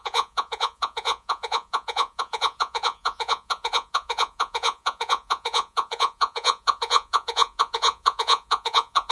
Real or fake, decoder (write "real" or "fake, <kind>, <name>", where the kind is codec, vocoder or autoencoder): fake, vocoder, Vocos